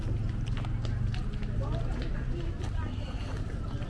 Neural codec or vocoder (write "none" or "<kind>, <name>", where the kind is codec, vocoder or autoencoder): none